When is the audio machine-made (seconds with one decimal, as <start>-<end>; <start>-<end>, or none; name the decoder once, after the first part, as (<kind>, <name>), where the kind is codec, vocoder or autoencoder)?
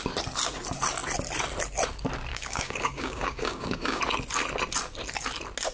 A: 2.3-4.0 (codec, DAC)